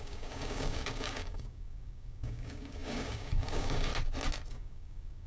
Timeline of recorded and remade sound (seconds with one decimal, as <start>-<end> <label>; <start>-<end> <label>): 0.0-3.9 remade; 3.9-4.5 recorded; 4.5-5.3 remade